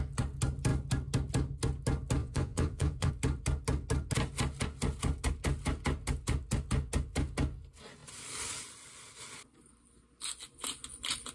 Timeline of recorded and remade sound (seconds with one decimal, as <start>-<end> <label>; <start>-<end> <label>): 0.0-2.2 recorded; 2.2-3.1 remade; 3.1-11.3 recorded